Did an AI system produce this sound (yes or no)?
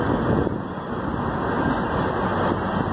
no